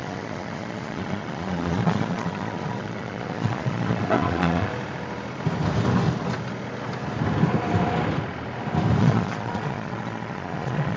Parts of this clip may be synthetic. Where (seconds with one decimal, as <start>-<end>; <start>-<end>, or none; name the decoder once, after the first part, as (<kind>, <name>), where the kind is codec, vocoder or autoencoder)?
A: 0.0-4.7 (vocoder, Vocos); 9.0-11.0

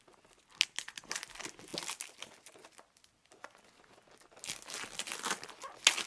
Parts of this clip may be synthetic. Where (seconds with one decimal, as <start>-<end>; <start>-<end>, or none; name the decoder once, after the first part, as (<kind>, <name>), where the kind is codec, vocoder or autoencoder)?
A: none

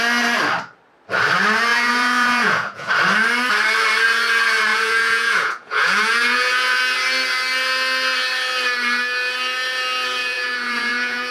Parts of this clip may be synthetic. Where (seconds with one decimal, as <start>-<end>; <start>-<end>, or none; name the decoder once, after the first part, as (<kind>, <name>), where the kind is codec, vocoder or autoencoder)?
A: 1.7-2.9 (vocoder, Vocos); 4.7-6.8; 10.2-11.3

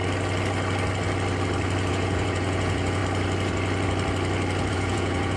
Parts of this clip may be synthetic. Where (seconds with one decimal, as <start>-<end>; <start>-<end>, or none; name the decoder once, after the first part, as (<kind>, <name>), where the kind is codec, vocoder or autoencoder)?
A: 1.9-3.0 (vocoder, Vocos); 4.7-5.4